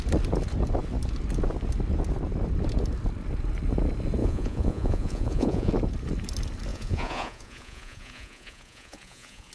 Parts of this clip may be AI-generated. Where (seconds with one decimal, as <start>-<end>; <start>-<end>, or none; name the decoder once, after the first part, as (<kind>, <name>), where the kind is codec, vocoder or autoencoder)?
4.2-5.7 (vocoder, Vocos); 6.7-9.5